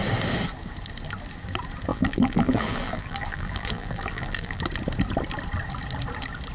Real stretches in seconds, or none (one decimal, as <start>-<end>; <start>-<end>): 0.0-1.9; 4.6-6.5